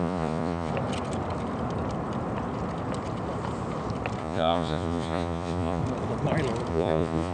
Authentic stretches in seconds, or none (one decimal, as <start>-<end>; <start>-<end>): 0.7-4.2; 5.8-6.7